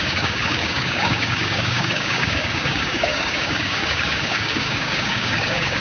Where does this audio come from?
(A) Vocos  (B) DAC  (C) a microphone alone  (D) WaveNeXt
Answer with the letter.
B